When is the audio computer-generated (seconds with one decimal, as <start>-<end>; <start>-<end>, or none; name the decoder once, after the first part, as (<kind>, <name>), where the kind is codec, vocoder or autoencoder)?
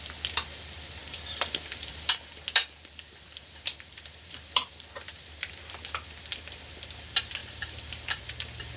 1.0-5.5 (vocoder, BigVGAN v2); 7.4-8.2